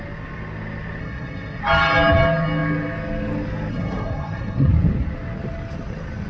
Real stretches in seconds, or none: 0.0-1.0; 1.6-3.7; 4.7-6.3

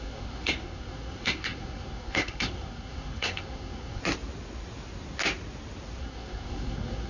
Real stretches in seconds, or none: 4.0-6.0

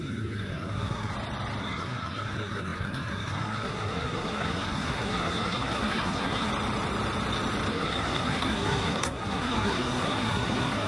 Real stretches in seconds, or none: 1.1-1.6; 6.5-7.7

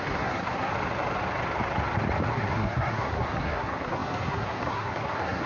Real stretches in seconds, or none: 0.7-2.3